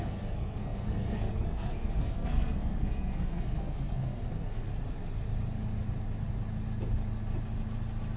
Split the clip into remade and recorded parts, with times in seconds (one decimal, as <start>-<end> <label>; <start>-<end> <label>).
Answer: 0.0-4.7 remade; 4.7-8.2 recorded